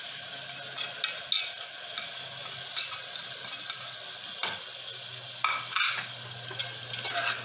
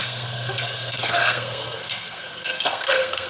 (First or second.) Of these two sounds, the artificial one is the second